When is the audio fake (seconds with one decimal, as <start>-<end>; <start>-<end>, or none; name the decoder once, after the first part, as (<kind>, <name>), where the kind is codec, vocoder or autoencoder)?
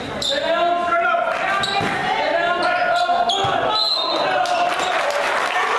none